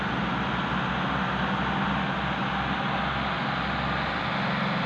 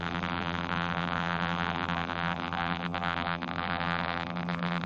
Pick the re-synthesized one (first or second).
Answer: second